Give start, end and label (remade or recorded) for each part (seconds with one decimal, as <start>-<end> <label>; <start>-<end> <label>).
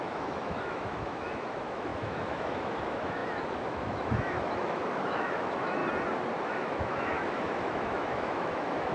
0.0-5.8 remade; 5.8-6.4 recorded; 6.4-8.9 remade